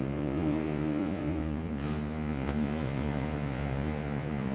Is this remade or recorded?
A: remade